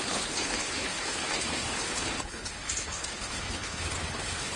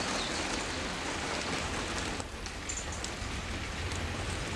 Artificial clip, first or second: first